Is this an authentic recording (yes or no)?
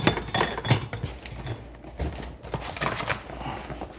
yes